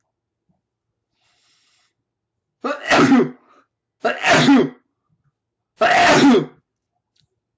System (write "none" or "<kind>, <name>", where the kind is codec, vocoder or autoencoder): none